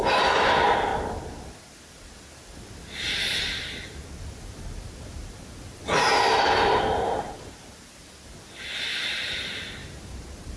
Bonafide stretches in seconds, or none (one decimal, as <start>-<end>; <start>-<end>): 0.0-10.6